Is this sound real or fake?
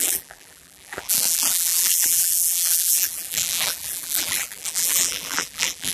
fake